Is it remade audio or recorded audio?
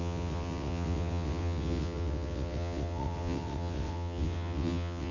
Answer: remade